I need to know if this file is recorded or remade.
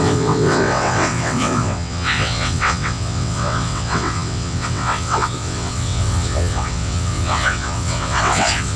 remade